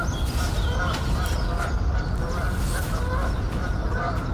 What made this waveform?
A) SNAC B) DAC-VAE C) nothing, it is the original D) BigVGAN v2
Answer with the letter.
C